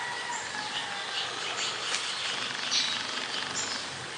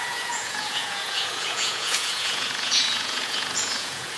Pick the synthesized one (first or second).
second